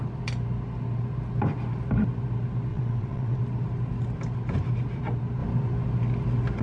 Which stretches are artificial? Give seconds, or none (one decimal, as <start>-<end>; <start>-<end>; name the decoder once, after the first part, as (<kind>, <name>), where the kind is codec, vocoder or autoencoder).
2.7-3.4 (vocoder, WaveNeXt)